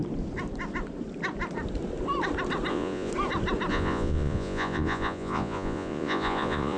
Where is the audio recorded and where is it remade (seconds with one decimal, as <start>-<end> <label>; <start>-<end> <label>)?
0.0-2.7 recorded; 2.7-3.1 remade; 3.1-3.7 recorded; 3.7-6.8 remade